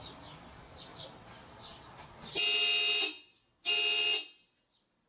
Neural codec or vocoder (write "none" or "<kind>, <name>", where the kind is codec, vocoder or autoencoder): none